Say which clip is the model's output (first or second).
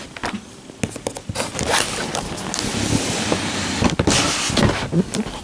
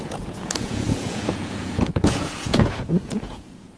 second